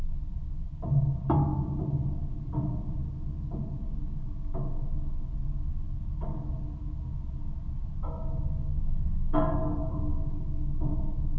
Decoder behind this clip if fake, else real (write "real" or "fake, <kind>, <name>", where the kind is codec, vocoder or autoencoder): real